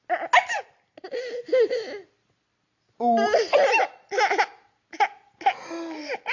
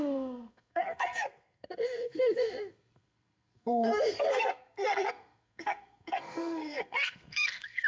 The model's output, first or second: second